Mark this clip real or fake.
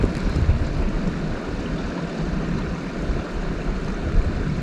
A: real